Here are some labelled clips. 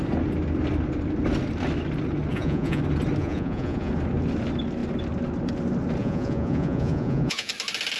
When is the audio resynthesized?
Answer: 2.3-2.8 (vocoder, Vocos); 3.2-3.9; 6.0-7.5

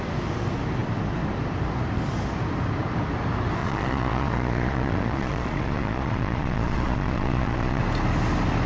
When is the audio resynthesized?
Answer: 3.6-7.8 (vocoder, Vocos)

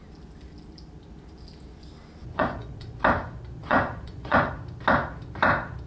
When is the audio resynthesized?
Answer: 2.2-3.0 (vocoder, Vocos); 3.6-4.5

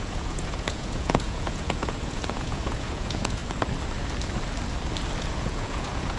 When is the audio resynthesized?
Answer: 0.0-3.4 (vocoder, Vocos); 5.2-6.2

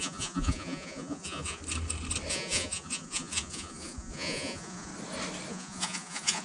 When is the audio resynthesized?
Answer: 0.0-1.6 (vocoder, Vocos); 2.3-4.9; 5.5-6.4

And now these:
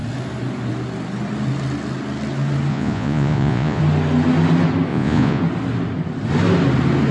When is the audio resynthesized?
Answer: 2.7-3.8 (vocoder, Vocos); 4.9-5.4

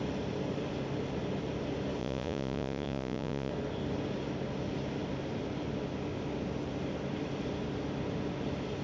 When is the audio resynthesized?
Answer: 2.0-3.5 (vocoder, Vocos)